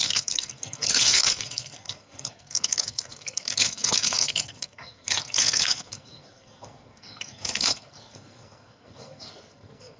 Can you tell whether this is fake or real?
fake